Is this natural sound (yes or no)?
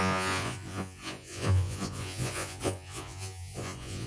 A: no